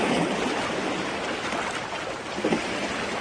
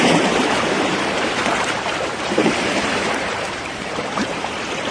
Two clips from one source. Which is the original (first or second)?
first